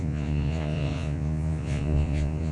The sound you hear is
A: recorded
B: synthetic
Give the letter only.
B